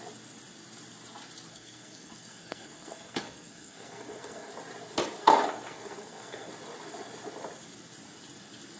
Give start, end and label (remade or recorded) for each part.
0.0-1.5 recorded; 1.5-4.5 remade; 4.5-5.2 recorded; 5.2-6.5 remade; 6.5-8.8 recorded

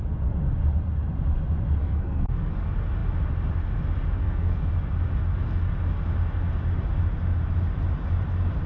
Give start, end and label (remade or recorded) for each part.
0.0-1.8 recorded; 1.8-2.5 remade; 2.5-4.2 recorded; 4.2-4.7 remade; 4.7-8.7 recorded

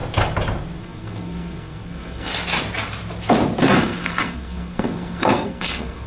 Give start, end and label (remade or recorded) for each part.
0.0-0.8 recorded; 0.8-2.3 remade; 2.3-3.6 recorded; 3.6-6.1 remade

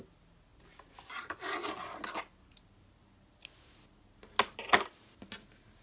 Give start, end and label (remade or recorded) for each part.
0.0-5.8 recorded

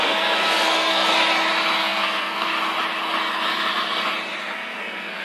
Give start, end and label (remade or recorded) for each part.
0.0-1.1 remade; 1.1-1.8 recorded; 1.8-2.5 remade; 2.5-4.4 recorded; 4.4-5.2 remade